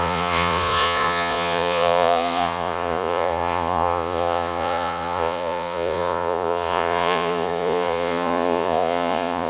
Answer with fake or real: fake